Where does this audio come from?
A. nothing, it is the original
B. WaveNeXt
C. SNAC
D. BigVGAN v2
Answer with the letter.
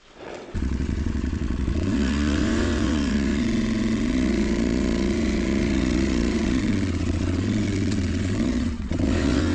B